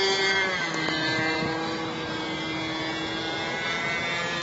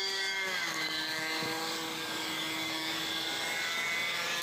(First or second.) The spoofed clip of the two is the second